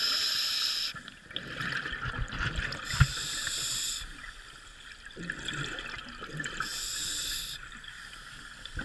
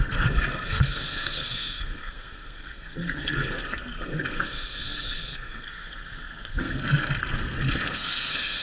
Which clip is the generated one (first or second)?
second